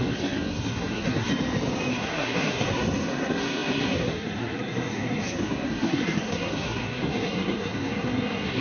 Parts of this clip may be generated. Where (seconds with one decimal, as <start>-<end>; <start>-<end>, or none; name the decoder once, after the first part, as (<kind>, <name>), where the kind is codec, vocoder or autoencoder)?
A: 0.0-1.3 (codec, SNAC); 1.9-8.6